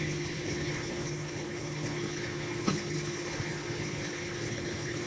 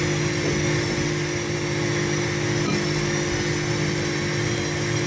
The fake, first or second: first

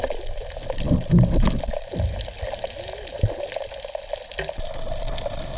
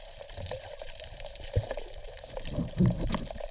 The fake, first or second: second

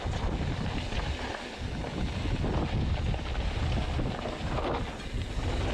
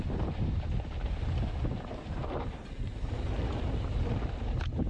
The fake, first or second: second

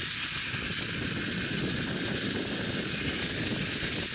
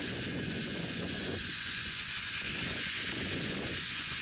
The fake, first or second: second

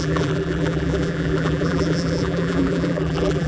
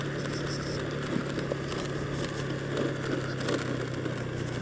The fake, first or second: first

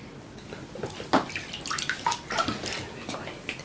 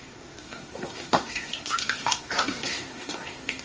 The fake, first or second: second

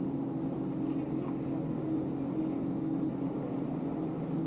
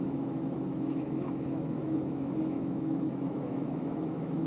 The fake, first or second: second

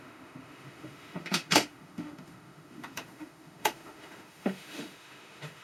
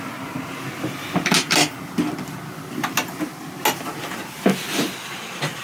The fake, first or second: first